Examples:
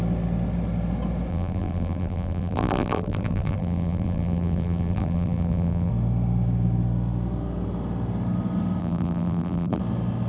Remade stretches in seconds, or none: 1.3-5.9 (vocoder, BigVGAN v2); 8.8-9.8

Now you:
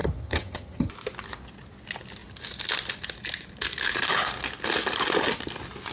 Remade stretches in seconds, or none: 0.0-0.9 (vocoder, HiFi-GAN)

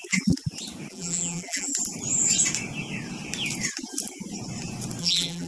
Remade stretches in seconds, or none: 0.9-1.7 (vocoder, BigVGAN v2); 5.0-5.5